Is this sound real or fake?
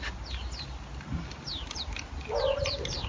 real